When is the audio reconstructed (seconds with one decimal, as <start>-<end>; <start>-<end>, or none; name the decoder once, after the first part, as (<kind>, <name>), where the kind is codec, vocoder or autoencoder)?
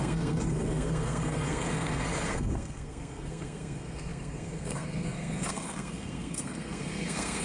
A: 0.0-7.4 (codec, SNAC)